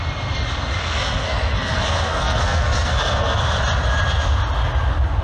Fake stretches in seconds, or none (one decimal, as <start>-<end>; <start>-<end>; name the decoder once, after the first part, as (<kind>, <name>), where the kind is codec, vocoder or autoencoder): 0.8-3.4 (codec, SNAC)

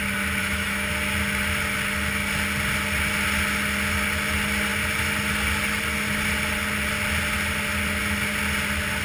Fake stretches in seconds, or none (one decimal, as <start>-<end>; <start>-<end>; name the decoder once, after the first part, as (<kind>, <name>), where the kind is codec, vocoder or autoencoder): 0.4-0.9 (autoencoder, DAC-VAE)

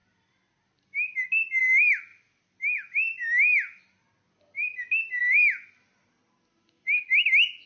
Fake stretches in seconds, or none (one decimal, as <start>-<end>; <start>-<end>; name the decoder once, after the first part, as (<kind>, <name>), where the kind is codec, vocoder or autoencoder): none

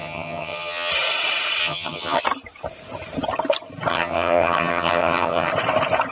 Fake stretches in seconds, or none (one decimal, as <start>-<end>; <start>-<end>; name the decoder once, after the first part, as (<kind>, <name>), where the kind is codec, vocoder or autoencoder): 0.0-0.9 (vocoder, HiFi-GAN); 1.6-2.2; 3.9-5.5

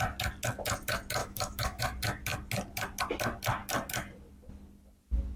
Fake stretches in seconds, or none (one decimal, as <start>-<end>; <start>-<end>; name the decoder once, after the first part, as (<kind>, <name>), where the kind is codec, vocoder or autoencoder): 1.2-1.8 (autoencoder, DAC-VAE)

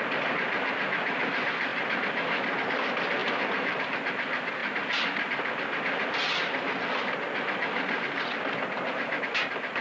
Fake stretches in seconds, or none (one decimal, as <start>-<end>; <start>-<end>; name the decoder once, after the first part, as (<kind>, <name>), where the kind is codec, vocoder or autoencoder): none

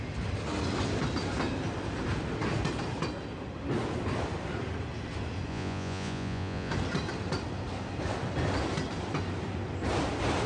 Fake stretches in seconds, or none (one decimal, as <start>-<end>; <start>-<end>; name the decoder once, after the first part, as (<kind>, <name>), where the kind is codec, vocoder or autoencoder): 5.5-6.7 (vocoder, Vocos)